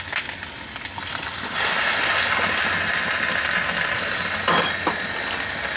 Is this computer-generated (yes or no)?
no